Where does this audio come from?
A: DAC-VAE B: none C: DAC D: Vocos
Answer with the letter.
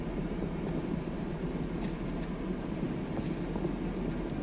B